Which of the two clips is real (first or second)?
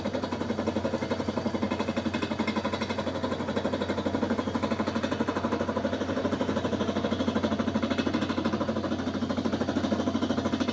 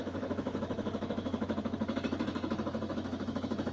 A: first